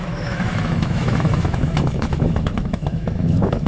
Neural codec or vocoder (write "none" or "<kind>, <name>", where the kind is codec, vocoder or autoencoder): autoencoder, DAC-VAE